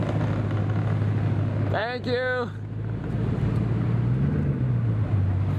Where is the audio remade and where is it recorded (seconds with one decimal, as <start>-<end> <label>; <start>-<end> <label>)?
0.0-5.6 recorded